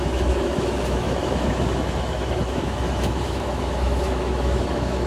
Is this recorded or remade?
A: remade